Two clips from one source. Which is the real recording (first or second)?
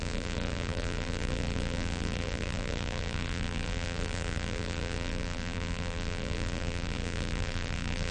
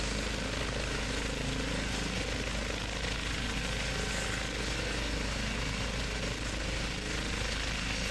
second